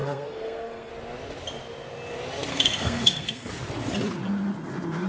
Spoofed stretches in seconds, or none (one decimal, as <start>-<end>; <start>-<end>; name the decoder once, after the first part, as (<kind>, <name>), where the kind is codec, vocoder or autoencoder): 0.0-0.9 (codec, SNAC); 2.5-3.5